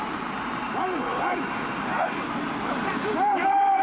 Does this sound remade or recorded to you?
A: remade